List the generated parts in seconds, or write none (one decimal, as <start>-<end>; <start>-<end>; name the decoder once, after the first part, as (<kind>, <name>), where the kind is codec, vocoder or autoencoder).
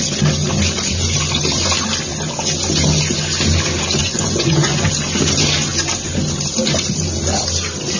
4.0-4.9 (vocoder, Vocos)